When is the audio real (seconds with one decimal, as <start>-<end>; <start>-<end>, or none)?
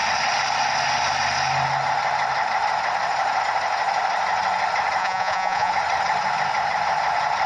0.0-5.0; 5.7-7.5